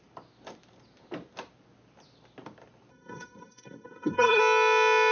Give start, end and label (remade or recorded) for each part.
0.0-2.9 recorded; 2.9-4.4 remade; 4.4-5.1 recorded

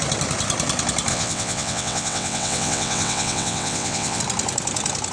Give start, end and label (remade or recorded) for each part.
0.0-1.1 recorded; 1.1-4.2 remade; 4.2-5.1 recorded

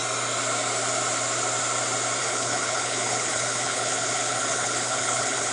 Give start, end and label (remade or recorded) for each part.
0.0-2.2 recorded; 2.2-5.5 remade

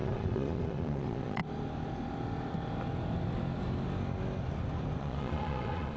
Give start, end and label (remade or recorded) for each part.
0.0-1.4 remade; 1.4-5.0 recorded; 5.0-6.0 remade

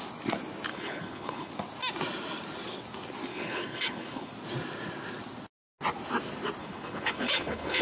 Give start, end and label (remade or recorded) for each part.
0.0-0.7 recorded; 0.7-1.5 remade; 1.5-3.3 recorded; 3.3-4.3 remade; 4.3-6.6 recorded; 6.6-7.8 remade

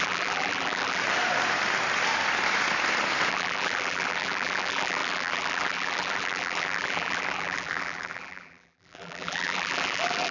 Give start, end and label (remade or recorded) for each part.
0.0-1.0 remade; 1.0-3.3 recorded; 3.3-10.3 remade

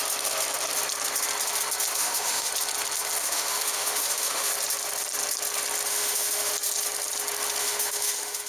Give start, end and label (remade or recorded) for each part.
0.0-2.0 recorded; 2.0-2.5 remade; 2.5-3.2 recorded; 3.2-4.5 remade; 4.5-5.9 recorded; 5.9-6.5 remade; 6.5-7.6 recorded; 7.6-8.5 remade